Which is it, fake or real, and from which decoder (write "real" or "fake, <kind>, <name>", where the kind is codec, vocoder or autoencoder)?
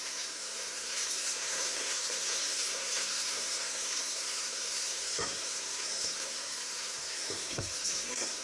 fake, codec, SNAC